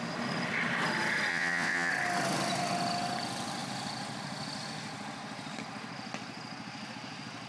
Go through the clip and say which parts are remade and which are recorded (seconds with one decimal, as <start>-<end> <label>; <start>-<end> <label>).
0.0-1.3 recorded; 1.3-1.9 remade; 1.9-7.5 recorded